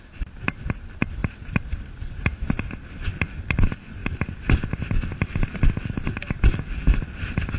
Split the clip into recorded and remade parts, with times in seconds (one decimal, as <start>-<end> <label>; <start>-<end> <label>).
0.0-7.6 recorded